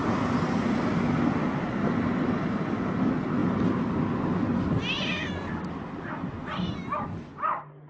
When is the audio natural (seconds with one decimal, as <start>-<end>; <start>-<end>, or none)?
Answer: 0.0-7.9